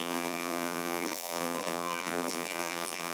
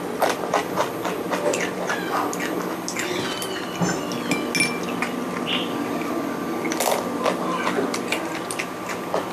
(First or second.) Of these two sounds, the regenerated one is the first